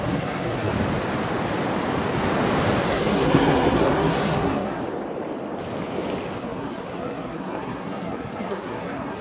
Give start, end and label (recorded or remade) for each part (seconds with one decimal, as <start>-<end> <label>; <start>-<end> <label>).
0.0-0.7 remade; 0.7-2.9 recorded; 2.9-4.8 remade; 4.8-6.4 recorded; 6.4-9.2 remade